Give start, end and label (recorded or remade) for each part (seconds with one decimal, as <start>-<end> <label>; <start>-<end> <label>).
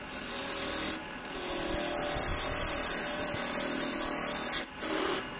0.0-2.3 recorded; 2.3-3.3 remade; 3.3-5.4 recorded